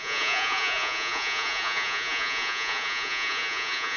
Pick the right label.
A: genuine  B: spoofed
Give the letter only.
B